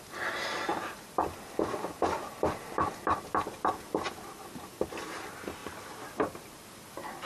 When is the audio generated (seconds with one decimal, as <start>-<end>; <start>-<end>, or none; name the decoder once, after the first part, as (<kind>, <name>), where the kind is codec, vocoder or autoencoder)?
none